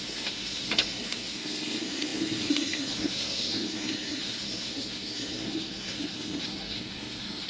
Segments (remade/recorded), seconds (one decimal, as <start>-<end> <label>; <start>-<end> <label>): 0.0-7.5 remade